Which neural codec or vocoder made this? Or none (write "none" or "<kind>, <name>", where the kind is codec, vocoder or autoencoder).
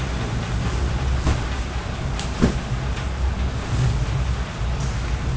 none